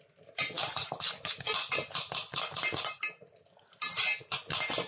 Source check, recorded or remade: recorded